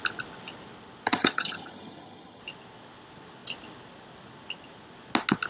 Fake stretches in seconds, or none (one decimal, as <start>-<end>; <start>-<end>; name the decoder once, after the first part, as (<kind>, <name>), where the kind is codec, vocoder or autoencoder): 1.1-2.4 (vocoder, HiFi-GAN)